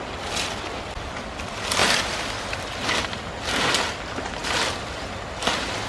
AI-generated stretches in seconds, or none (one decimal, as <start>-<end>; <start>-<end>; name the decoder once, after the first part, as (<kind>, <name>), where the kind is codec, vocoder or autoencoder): none